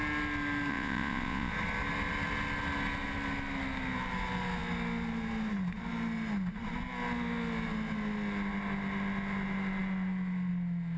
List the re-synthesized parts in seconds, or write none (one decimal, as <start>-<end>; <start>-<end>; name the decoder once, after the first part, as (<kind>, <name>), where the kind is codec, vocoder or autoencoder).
0.7-1.5 (vocoder, Vocos)